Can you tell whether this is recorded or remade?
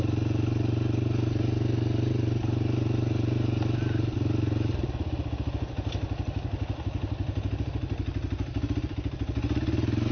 recorded